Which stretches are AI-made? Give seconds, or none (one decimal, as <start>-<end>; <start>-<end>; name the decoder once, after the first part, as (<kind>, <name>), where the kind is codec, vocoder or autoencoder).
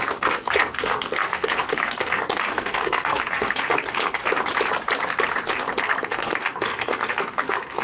0.0-4.2 (codec, SNAC); 5.8-7.8